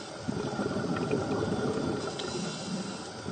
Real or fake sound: real